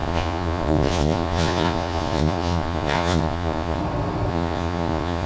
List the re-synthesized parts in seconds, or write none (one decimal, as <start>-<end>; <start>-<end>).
0.0-3.8; 4.3-5.3

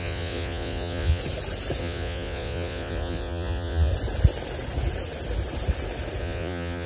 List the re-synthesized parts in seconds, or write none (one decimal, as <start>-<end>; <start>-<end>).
0.0-1.2; 1.8-3.9; 6.2-6.9

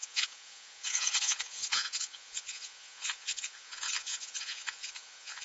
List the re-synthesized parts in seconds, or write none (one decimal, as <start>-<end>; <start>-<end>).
0.0-5.4

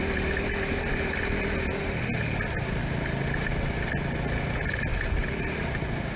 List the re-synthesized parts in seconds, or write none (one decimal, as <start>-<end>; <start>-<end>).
none

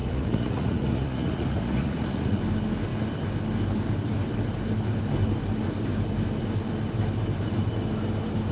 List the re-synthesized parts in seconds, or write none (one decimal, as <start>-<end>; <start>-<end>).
0.0-2.4

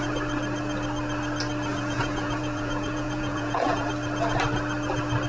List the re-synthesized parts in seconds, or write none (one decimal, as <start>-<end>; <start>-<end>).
1.7-3.9